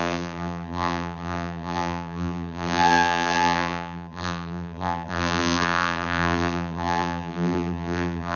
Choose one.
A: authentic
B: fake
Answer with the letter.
B